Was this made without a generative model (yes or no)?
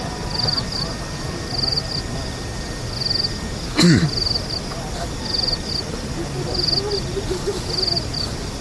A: yes